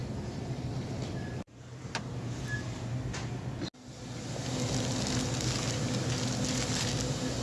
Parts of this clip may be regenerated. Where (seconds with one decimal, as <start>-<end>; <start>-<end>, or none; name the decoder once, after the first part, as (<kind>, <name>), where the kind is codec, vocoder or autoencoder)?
none